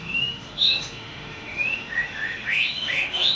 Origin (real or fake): fake